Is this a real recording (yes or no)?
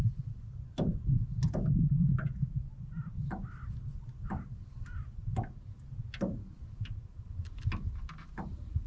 yes